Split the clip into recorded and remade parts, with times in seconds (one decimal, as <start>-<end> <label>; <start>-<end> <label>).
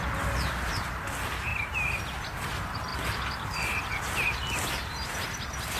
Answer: 0.0-5.8 recorded